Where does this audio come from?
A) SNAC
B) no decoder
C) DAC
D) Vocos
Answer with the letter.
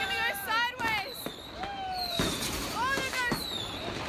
B